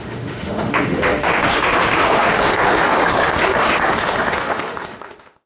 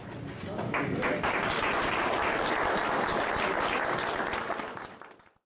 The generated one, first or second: first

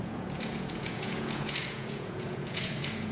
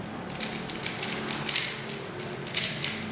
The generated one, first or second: first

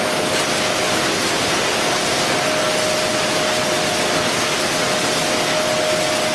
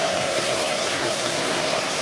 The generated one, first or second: second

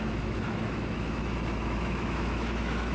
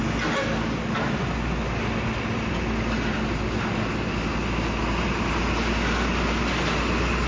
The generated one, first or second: first